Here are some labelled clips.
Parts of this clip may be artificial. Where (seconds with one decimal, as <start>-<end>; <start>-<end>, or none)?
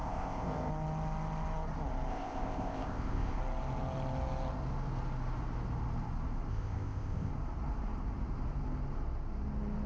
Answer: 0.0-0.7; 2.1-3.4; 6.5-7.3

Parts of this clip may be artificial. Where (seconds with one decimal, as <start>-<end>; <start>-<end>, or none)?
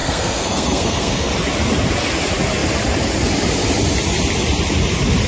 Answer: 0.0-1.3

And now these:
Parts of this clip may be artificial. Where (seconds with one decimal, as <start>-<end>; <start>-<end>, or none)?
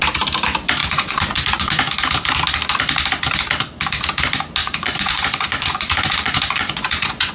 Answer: 0.8-1.8; 4.6-7.3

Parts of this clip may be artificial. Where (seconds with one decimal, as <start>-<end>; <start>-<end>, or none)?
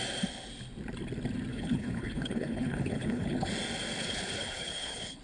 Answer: 1.5-3.5; 4.0-5.2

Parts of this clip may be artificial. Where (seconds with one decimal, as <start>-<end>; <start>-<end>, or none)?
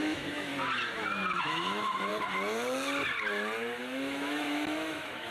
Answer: 0.0-0.5; 1.4-2.1; 3.8-5.3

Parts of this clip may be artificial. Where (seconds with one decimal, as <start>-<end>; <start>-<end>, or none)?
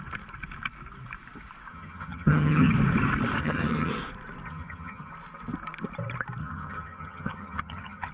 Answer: 1.7-2.7; 3.4-3.9; 4.5-5.1; 6.4-8.1